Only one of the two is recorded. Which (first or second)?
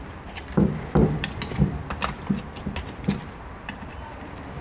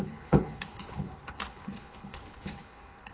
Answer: first